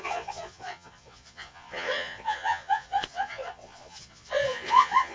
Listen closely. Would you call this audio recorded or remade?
remade